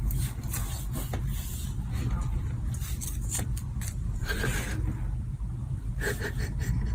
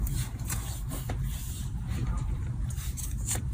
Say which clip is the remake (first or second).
second